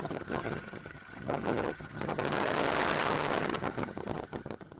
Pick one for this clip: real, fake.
fake